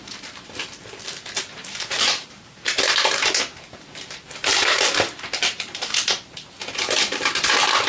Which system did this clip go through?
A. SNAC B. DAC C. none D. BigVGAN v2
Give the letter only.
D